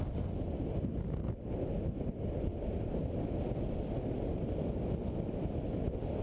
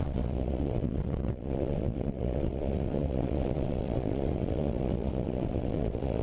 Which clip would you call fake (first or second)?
second